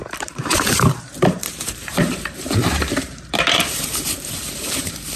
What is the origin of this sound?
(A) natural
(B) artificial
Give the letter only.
B